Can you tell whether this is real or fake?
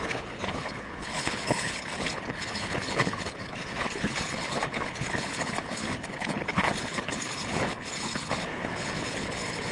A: fake